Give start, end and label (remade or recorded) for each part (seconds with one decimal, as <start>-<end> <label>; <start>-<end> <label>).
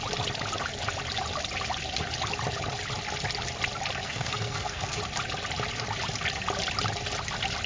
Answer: 0.0-4.0 recorded; 4.0-5.0 remade; 5.0-7.7 recorded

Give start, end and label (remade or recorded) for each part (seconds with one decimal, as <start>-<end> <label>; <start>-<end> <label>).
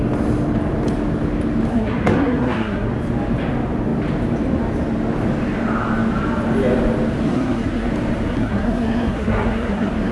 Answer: 0.0-1.7 recorded; 1.7-2.9 remade; 2.9-7.2 recorded; 7.2-7.9 remade; 7.9-8.3 recorded; 8.3-10.1 remade